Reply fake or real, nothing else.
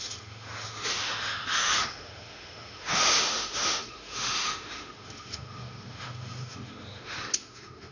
fake